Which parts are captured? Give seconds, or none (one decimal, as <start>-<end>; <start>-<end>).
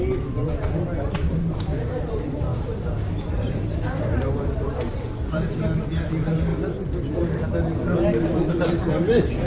0.0-0.4; 5.6-9.5